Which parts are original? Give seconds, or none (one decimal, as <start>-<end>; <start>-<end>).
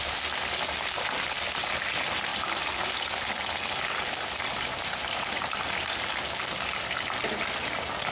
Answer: 0.0-8.1